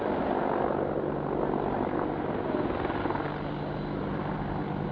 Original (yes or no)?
yes